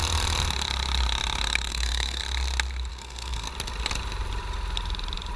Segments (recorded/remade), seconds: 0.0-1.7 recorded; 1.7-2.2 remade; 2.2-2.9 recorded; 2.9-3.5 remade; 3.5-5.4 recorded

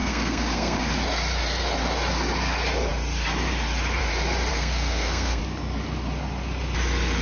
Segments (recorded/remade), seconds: 0.0-0.8 remade; 0.8-4.5 recorded; 4.5-5.4 remade; 5.4-7.2 recorded

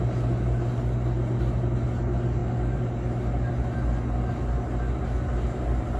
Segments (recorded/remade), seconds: 0.0-6.0 recorded